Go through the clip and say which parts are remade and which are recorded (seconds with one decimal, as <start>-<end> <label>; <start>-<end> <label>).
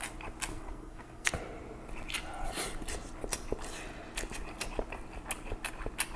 0.0-0.5 recorded; 0.5-1.3 remade; 1.3-6.2 recorded